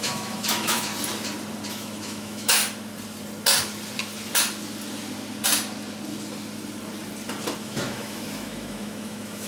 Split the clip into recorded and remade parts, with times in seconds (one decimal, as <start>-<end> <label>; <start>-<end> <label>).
0.0-0.9 remade; 0.9-1.7 recorded; 1.7-2.6 remade; 2.6-7.6 recorded; 7.6-9.5 remade